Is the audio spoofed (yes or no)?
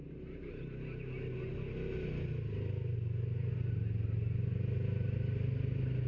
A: no